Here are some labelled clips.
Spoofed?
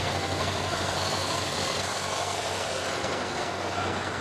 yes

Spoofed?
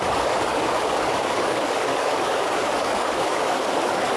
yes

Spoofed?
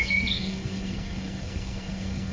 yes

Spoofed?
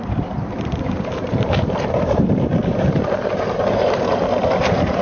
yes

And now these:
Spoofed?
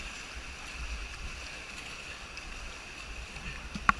no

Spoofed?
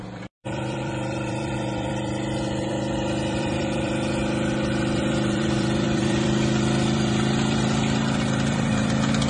yes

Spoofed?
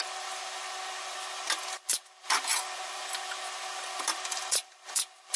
no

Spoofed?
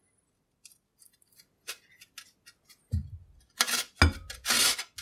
no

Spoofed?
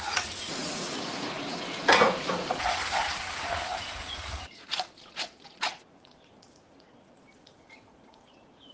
yes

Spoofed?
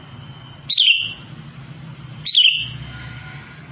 no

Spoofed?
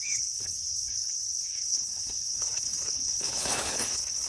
yes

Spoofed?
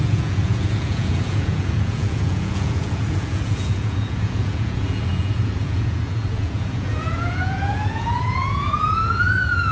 yes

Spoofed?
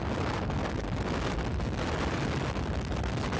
no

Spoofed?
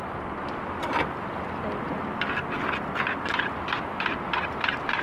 no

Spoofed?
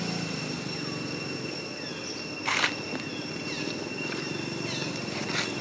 no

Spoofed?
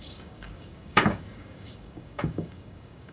yes